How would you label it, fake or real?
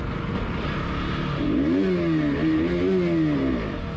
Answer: real